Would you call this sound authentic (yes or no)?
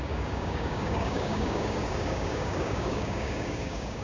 no